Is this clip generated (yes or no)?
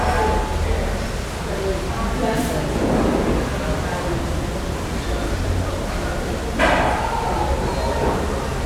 no